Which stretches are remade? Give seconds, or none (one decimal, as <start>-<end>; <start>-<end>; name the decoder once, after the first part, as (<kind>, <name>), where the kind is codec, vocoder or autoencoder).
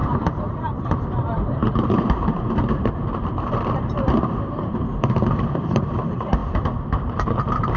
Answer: 0.0-7.8 (vocoder, BigVGAN v2)